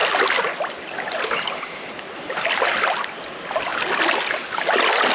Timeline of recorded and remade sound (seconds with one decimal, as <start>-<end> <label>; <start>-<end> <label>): 0.0-5.1 recorded